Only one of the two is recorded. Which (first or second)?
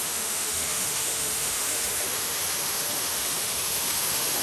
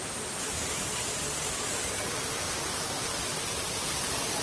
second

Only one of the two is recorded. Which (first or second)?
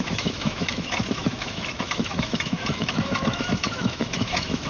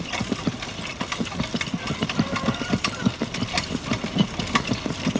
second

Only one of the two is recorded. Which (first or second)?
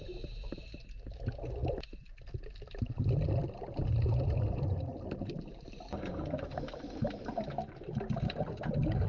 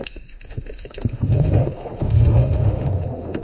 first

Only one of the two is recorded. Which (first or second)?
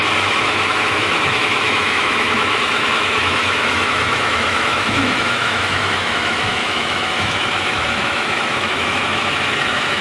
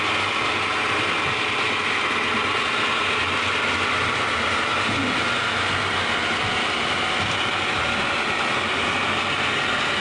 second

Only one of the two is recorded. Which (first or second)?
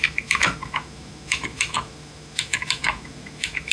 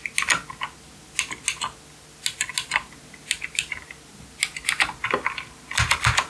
second